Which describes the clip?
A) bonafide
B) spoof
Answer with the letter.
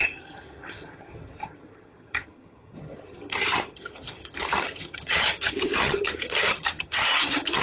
B